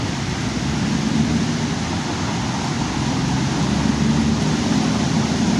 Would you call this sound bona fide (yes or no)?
yes